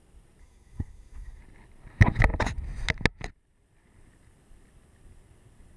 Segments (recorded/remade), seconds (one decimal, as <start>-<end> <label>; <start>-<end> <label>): 0.0-0.4 recorded; 0.4-1.4 remade; 1.4-5.8 recorded